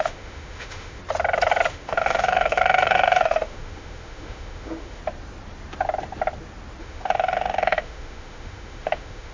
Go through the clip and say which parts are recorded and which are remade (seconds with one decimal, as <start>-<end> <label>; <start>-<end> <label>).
0.0-1.0 remade; 1.0-1.7 recorded; 1.7-5.0 remade; 5.0-6.8 recorded; 6.8-9.3 remade